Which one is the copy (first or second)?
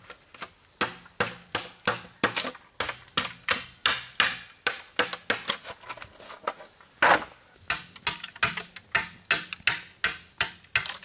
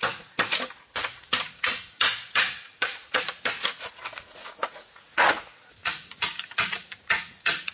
second